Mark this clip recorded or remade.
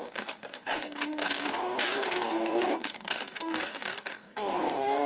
remade